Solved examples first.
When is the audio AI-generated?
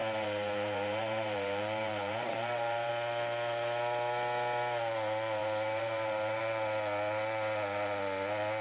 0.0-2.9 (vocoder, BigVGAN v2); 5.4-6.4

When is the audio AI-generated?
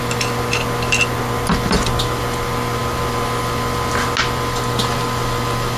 none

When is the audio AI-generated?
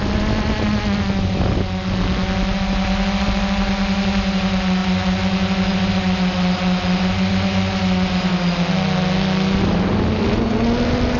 none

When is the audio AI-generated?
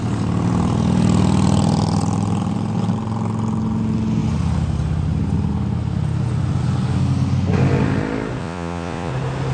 8.4-9.1 (vocoder, Vocos)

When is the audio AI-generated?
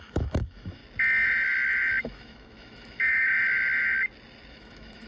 0.0-0.8 (autoencoder, DAC-VAE); 2.0-3.3; 4.5-5.1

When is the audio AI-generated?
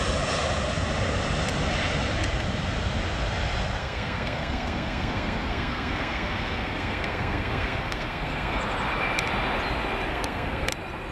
3.8-8.6 (codec, SNAC); 10.1-10.7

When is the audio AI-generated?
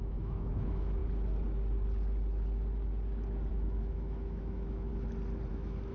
0.0-1.0 (autoencoder, DAC-VAE); 3.5-4.9; 5.5-5.9